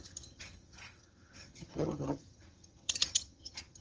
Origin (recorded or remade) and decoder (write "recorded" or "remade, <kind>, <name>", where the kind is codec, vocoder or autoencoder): remade, vocoder, HiFi-GAN